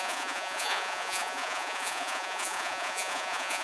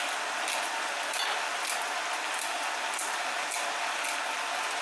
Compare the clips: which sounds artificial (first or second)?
first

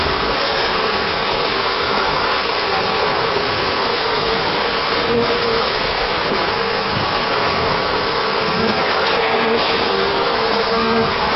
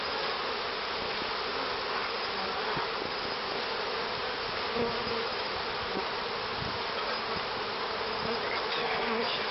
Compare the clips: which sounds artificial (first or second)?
first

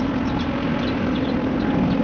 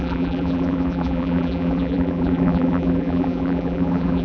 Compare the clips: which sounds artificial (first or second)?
second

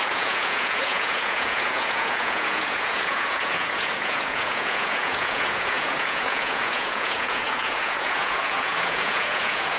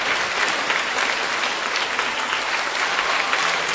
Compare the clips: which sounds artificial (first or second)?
first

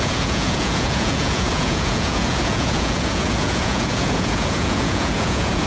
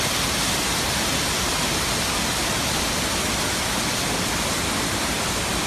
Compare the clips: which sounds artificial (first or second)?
first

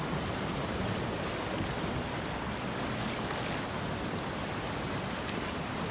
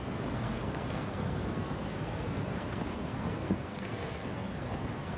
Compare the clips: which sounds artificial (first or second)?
second